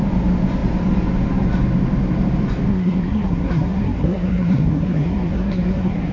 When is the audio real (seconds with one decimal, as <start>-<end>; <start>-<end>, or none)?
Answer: 0.0-2.7